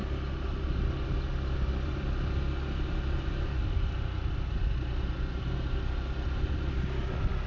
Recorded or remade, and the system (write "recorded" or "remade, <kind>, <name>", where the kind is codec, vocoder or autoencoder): recorded